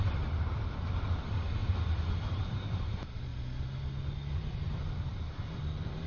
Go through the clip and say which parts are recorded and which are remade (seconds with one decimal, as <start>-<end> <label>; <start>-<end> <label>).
0.0-1.6 remade; 1.6-2.3 recorded; 2.3-3.3 remade; 3.3-4.3 recorded; 4.3-6.1 remade